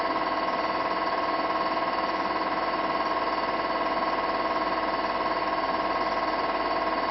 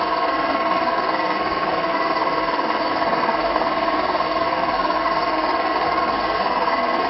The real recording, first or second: first